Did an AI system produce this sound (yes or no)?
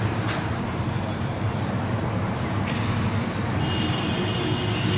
no